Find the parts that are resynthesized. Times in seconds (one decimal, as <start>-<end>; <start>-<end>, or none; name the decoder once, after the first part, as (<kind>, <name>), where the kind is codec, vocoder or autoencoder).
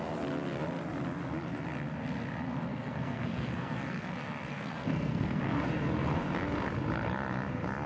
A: 2.7-4.1 (codec, SNAC); 4.5-5.7